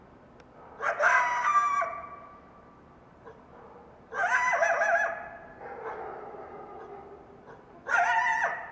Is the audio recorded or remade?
recorded